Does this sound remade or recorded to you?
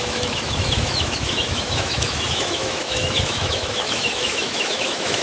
remade